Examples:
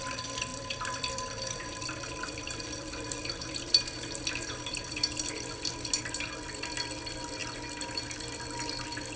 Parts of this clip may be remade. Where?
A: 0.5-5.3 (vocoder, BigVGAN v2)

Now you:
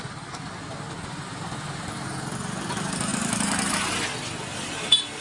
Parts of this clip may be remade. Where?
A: none

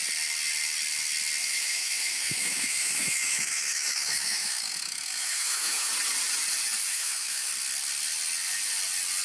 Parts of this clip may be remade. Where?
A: 1.4-5.9 (autoencoder, DAC-VAE); 6.9-7.5